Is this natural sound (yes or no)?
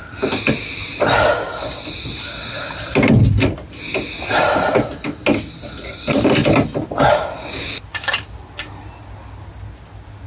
yes